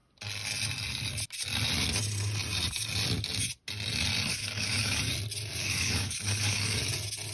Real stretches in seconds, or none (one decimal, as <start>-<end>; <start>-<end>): 0.0-4.3; 5.0-5.6; 6.8-7.3